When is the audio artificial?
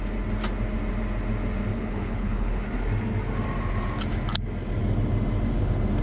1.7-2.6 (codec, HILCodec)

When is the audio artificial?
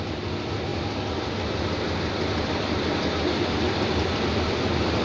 none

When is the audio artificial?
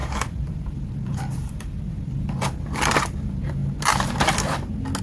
0.0-3.6 (vocoder, BigVGAN v2)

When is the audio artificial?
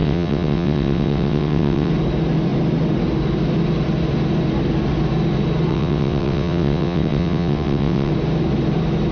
0.0-1.9 (vocoder, WaveNeXt); 5.7-8.1